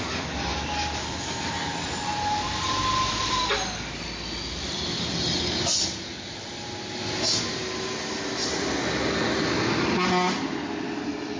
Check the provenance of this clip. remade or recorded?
recorded